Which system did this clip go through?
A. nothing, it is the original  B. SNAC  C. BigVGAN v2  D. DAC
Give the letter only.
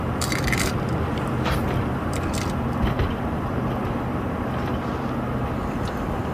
C